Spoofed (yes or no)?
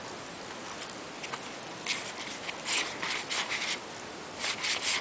no